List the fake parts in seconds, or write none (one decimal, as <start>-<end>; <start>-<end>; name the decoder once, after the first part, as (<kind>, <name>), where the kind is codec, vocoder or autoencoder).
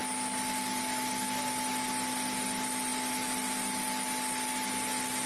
none